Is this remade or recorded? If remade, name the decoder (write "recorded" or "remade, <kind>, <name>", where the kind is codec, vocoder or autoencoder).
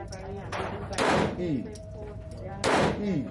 recorded